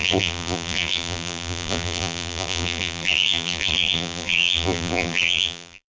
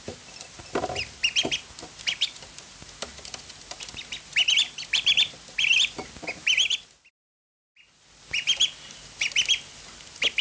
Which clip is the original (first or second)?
second